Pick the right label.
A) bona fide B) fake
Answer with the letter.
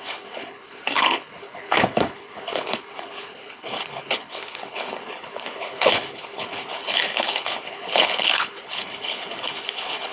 B